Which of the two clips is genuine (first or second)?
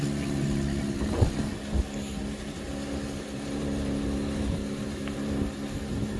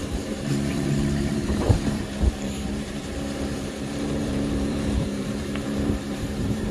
first